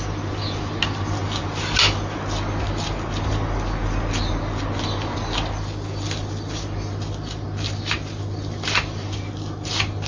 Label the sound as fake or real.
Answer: real